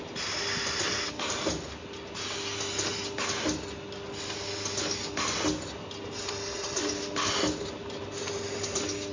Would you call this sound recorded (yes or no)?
yes